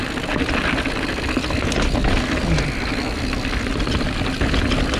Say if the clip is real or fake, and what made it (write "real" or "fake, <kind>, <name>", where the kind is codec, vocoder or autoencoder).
real